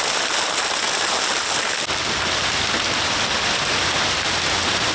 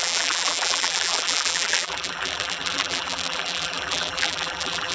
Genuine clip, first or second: first